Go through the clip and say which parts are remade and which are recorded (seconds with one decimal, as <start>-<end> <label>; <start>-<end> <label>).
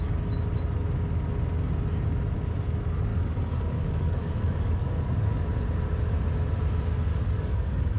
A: 0.0-3.1 recorded; 3.1-5.5 remade; 5.5-7.1 recorded; 7.1-8.0 remade